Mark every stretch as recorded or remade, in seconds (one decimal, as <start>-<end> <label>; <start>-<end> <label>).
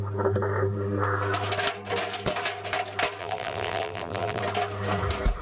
0.0-3.2 recorded; 3.2-4.4 remade; 4.4-5.4 recorded